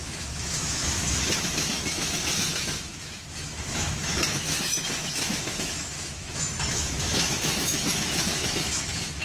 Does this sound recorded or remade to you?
remade